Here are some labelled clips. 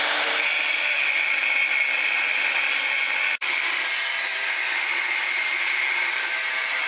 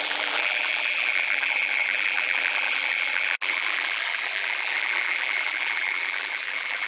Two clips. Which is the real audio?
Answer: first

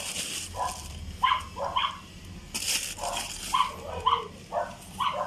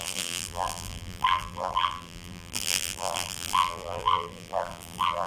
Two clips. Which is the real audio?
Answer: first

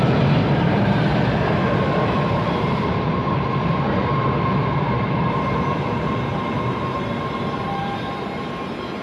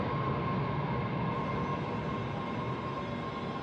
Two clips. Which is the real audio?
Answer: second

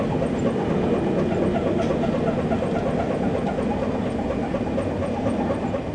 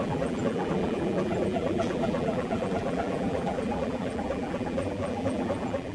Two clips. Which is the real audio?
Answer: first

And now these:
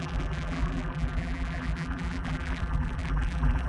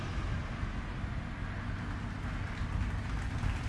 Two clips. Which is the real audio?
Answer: second